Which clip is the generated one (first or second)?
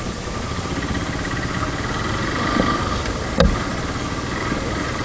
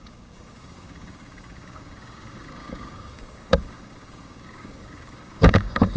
second